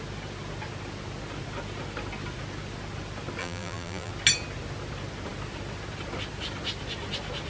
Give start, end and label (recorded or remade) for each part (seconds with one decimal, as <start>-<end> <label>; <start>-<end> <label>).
0.0-3.4 recorded; 3.4-4.1 remade; 4.1-7.5 recorded